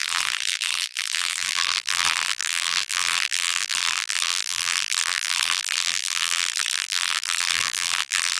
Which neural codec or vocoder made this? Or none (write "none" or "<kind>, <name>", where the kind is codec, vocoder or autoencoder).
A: vocoder, BigVGAN v2